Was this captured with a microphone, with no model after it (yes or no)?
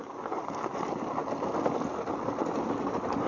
yes